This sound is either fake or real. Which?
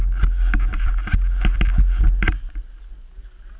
real